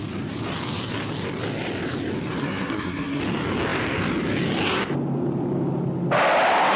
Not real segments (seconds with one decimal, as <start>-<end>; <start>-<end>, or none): 2.4-3.2